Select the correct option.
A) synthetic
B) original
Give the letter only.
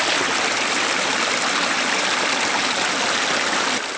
B